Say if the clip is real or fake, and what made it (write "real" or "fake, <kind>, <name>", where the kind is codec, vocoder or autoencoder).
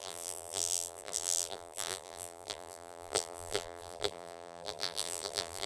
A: fake, vocoder, BigVGAN v2